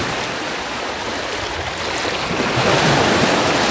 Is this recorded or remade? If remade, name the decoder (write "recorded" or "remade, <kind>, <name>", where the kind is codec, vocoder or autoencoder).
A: recorded